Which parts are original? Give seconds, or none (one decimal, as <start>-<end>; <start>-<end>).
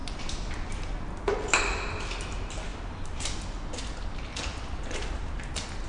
0.0-5.9